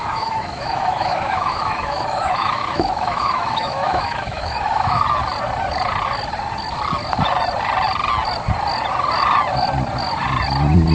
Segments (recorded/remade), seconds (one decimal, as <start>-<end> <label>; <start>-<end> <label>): 0.0-5.0 remade; 5.0-10.9 recorded